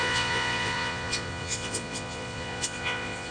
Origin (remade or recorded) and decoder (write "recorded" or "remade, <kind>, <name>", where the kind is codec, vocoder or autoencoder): remade, vocoder, Vocos